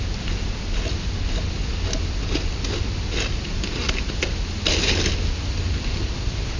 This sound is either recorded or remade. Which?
recorded